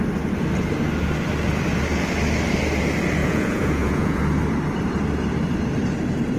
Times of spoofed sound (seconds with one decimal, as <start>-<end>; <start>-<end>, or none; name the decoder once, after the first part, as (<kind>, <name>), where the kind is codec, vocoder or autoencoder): 3.2-4.2 (vocoder, Vocos)